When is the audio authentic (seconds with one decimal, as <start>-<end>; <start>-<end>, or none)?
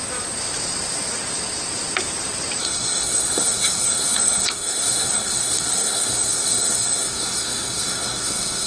0.0-2.6